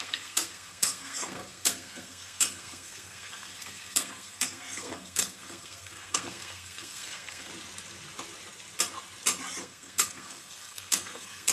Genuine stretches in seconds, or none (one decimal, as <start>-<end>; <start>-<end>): 7.5-9.6